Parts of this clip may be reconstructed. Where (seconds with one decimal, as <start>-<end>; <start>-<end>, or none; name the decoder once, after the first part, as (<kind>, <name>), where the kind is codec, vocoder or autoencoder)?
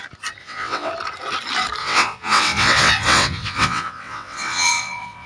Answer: 0.4-0.9 (vocoder, WaveNeXt); 1.8-5.3